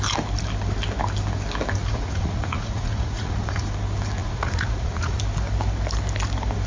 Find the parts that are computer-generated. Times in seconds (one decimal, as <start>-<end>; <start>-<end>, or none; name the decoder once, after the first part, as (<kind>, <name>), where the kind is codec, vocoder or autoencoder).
1.8-3.7 (vocoder, Vocos); 4.2-5.2